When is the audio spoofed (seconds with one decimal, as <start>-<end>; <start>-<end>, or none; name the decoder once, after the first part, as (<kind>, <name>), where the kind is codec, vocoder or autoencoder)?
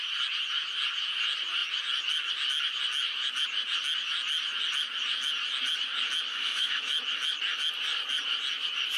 6.3-6.8 (autoencoder, DAC-VAE)